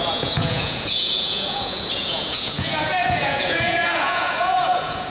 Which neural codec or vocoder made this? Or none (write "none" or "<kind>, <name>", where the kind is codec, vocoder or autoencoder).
vocoder, Vocos